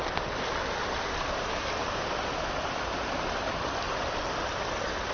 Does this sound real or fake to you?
real